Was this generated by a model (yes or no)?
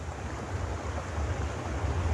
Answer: no